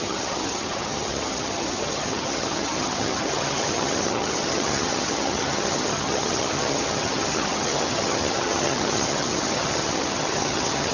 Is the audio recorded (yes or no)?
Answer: no